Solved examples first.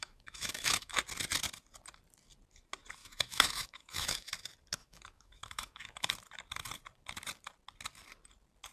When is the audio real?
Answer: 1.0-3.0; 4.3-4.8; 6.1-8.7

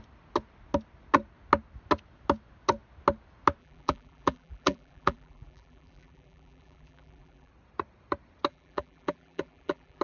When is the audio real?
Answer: 0.0-3.6; 7.5-8.5